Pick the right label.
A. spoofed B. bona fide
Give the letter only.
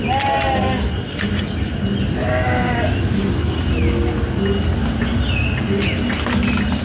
B